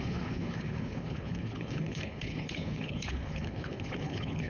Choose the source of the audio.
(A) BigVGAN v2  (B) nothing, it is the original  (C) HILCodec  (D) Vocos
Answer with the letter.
C